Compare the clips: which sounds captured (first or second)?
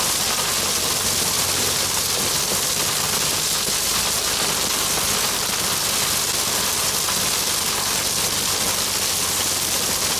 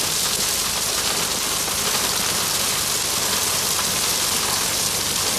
first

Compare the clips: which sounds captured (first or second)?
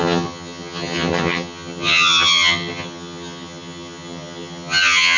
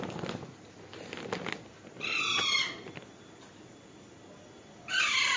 second